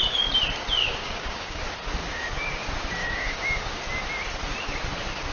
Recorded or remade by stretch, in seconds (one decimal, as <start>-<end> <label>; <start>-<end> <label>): 0.0-0.8 recorded; 0.8-1.6 remade; 1.6-2.0 recorded; 2.0-2.6 remade; 2.6-3.0 recorded; 3.0-3.8 remade; 3.8-5.3 recorded